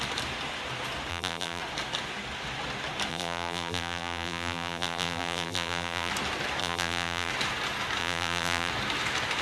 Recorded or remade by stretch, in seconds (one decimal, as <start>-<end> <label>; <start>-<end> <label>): 0.0-1.1 recorded; 1.1-1.6 remade; 1.6-3.1 recorded; 3.1-6.1 remade; 6.1-6.6 recorded; 6.6-7.3 remade; 7.3-8.0 recorded; 8.0-8.7 remade; 8.7-9.4 recorded